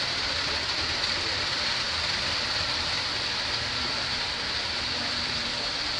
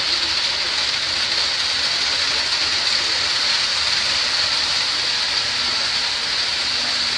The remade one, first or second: first